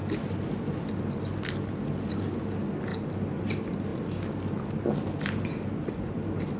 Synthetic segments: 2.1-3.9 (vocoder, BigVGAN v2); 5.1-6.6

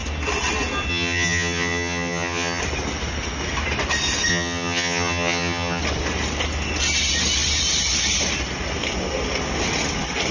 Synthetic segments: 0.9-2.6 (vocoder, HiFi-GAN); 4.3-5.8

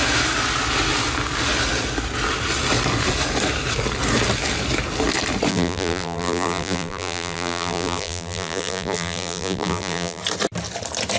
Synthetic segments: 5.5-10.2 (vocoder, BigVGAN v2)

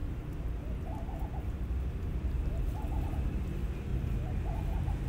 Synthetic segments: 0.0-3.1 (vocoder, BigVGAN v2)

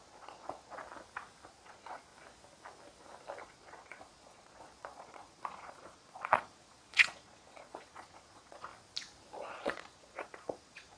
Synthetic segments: 0.0-0.8 (vocoder, Vocos); 1.5-2.1; 3.4-8.7; 9.5-11.0

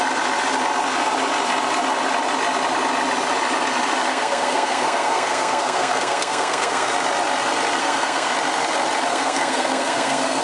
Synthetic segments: 4.1-6.9 (codec, SNAC); 7.8-8.3; 9.1-10.4

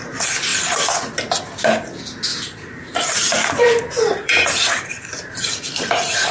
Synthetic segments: 2.3-6.3 (vocoder, BigVGAN v2)

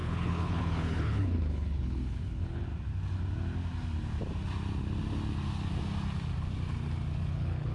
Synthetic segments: 0.0-2.7 (codec, HILCodec); 7.3-7.7